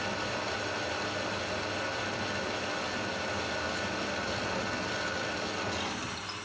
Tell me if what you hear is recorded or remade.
recorded